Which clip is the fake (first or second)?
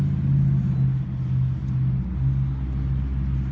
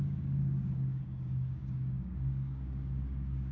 second